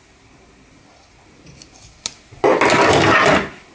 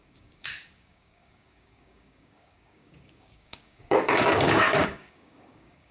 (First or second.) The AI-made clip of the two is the second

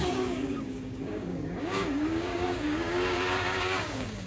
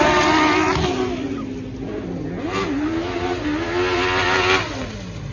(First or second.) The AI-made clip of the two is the first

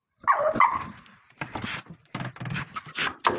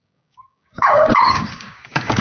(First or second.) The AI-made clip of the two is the second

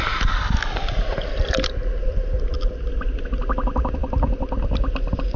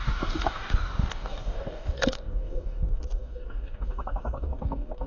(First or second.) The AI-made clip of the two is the second